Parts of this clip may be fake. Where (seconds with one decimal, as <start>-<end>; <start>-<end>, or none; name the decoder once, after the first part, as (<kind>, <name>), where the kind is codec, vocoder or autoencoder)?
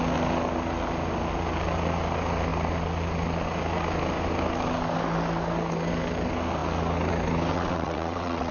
7.5-8.5 (vocoder, WaveNeXt)